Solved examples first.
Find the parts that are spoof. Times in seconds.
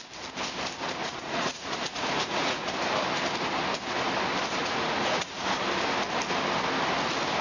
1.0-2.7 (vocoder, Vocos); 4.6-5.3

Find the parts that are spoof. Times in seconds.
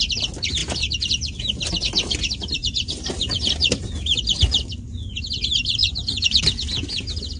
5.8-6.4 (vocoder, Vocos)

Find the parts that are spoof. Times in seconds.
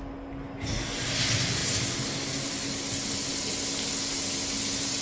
none